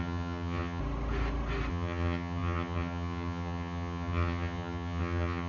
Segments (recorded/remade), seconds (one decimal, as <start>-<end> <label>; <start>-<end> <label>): 0.0-0.8 remade; 0.8-1.7 recorded; 1.7-5.5 remade